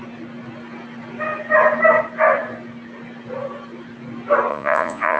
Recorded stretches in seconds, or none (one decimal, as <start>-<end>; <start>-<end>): 0.0-4.5